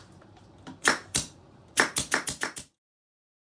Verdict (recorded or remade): remade